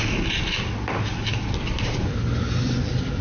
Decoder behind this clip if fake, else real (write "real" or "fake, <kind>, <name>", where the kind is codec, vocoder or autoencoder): real